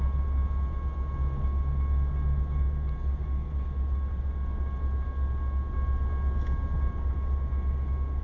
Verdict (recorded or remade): recorded